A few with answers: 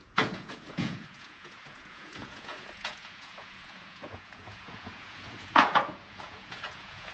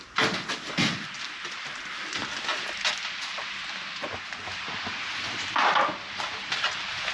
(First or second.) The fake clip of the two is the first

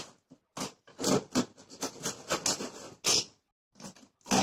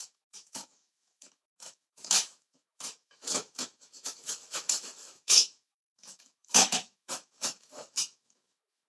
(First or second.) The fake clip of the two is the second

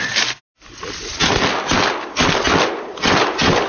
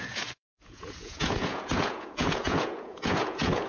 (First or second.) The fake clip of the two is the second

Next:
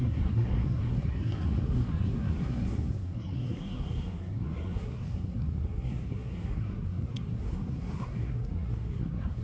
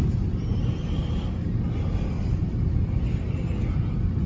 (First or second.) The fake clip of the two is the first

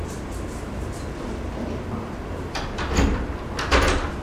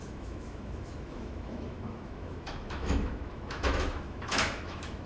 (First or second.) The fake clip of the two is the second